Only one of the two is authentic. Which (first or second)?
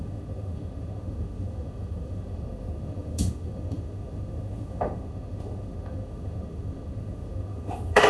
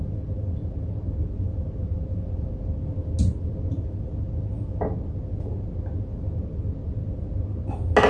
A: second